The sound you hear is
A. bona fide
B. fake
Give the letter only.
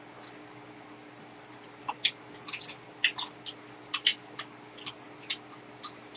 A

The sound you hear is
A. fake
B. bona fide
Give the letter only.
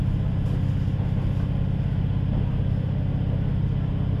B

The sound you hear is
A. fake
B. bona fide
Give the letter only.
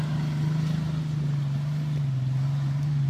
B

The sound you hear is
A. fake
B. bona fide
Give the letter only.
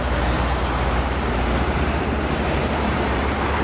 A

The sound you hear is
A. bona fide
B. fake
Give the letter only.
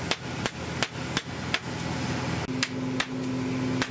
A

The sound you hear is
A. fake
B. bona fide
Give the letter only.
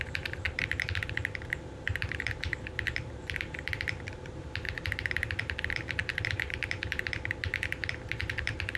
A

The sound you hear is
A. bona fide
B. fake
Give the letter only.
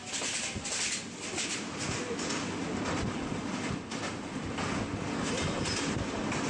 A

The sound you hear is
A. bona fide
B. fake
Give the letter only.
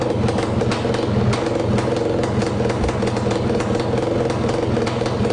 A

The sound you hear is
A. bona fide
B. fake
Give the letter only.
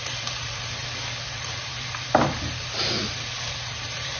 B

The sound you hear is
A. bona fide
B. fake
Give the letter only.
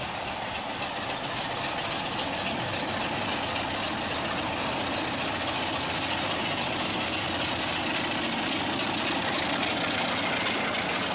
A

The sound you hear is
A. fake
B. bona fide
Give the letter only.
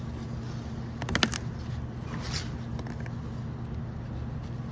B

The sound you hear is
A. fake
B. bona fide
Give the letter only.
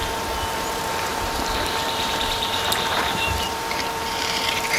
A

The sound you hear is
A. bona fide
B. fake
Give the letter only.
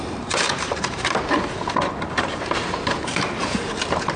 B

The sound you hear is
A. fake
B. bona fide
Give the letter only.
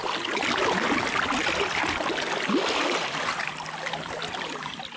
B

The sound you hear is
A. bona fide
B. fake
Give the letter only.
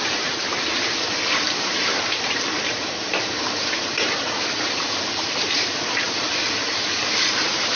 B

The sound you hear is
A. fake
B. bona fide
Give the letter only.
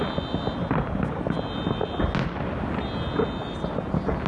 B